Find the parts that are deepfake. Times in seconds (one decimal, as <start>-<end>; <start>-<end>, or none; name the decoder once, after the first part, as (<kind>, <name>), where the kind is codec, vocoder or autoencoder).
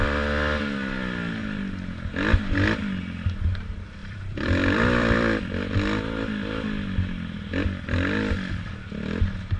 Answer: 4.0-5.6 (vocoder, BigVGAN v2)